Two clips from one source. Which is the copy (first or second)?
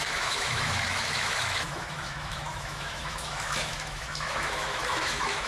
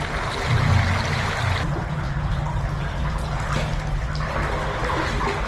first